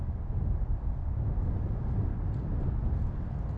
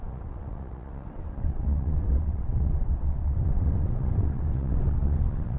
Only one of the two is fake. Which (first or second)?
second